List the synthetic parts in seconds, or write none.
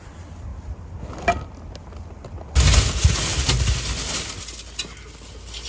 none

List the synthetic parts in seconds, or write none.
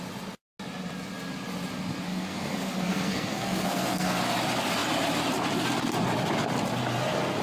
2.1-4.2 (codec, SNAC)